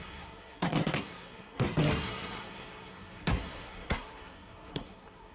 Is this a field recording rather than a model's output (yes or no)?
no